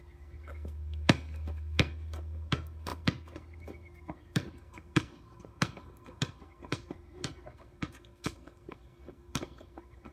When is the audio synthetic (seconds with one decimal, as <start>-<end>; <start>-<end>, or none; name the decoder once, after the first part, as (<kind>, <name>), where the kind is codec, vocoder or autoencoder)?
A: 0.0-10.1 (codec, SNAC)

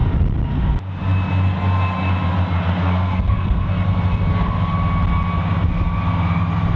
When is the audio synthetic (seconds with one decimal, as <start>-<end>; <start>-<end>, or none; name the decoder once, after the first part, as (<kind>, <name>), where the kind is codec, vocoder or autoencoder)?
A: 2.8-3.7 (codec, SNAC)

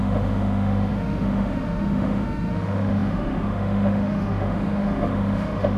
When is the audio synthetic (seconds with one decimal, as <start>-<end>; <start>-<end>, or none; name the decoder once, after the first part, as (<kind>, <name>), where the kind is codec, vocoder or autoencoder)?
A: 0.0-5.8 (autoencoder, DAC-VAE)

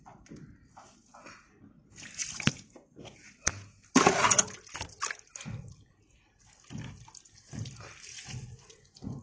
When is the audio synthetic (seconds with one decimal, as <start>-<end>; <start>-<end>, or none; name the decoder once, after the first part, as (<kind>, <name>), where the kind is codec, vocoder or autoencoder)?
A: 8.1-9.2 (vocoder, Vocos)

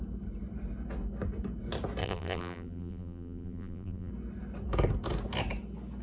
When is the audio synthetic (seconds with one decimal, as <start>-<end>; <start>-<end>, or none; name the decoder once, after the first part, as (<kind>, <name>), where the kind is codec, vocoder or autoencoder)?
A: 2.0-4.1 (vocoder, BigVGAN v2)

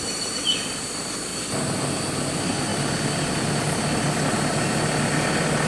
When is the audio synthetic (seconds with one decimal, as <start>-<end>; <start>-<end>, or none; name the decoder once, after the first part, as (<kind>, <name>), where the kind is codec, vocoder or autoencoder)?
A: none

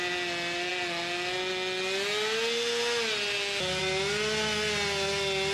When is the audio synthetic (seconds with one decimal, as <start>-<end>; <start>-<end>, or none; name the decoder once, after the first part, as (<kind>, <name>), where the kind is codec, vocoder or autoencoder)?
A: none

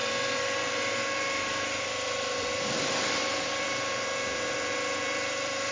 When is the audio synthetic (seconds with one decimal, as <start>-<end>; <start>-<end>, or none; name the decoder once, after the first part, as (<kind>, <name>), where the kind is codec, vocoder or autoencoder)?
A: 1.5-4.1 (vocoder, BigVGAN v2); 5.0-5.7